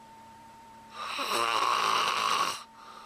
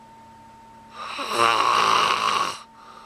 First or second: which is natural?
second